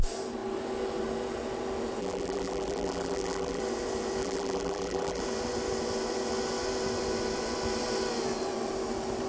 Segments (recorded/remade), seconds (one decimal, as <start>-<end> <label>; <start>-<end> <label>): 0.0-2.0 recorded; 2.0-3.6 remade; 3.6-4.2 recorded; 4.2-5.2 remade; 5.2-9.3 recorded